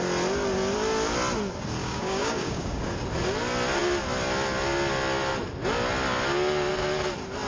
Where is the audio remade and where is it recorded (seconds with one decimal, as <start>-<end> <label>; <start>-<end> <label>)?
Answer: 0.0-1.8 recorded; 1.8-2.8 remade; 2.8-7.5 recorded